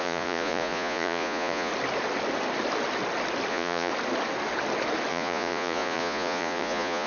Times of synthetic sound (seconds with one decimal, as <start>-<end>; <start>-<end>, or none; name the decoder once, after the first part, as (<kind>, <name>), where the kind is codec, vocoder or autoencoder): 0.0-1.7 (vocoder, Vocos); 3.5-3.9; 5.1-7.1